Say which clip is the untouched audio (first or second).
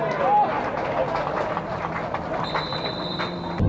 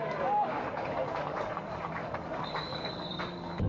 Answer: first